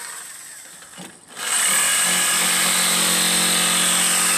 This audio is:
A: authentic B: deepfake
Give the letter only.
A